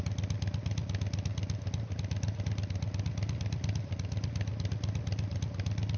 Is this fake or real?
real